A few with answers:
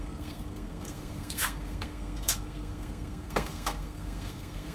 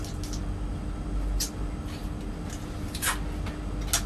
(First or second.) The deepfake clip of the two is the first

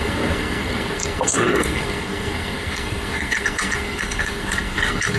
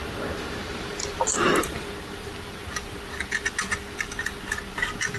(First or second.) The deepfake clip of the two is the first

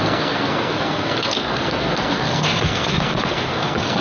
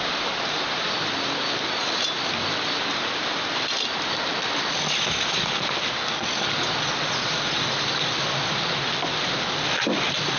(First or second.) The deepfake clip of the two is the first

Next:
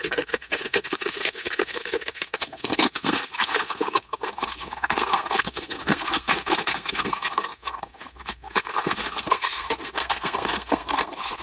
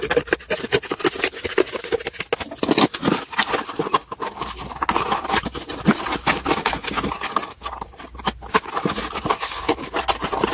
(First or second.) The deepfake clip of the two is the first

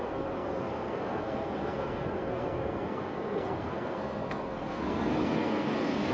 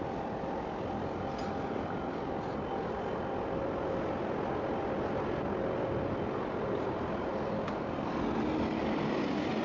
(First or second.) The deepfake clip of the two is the first